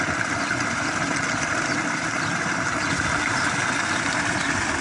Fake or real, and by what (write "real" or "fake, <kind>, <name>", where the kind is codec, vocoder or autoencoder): real